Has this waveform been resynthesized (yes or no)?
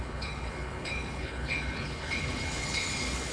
yes